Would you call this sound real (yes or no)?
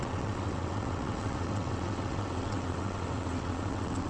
no